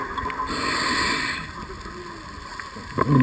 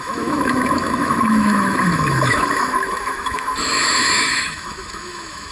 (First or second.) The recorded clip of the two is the first